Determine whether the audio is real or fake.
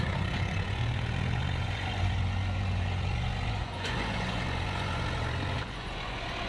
fake